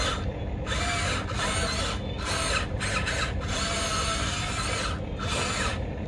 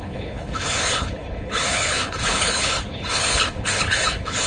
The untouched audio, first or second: first